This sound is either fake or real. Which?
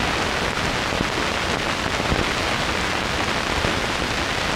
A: real